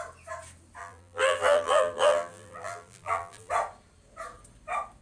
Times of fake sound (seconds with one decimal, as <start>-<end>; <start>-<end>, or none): 0.8-3.5

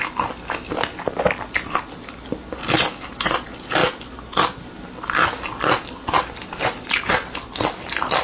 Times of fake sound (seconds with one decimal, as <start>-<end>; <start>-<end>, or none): none

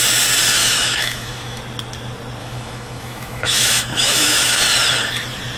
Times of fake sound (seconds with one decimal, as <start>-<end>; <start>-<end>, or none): 0.6-1.6; 2.4-4.6

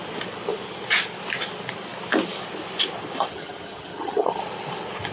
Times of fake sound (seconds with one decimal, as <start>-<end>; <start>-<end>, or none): 3.3-4.4

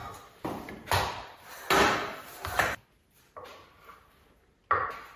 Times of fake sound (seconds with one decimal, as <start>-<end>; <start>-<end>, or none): 3.1-3.5